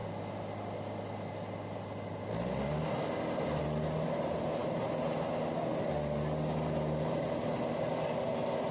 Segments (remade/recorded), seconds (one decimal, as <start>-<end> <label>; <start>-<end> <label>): 0.0-8.7 recorded